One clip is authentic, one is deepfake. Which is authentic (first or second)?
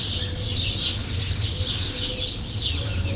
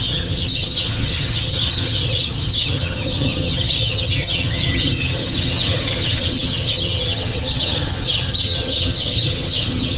first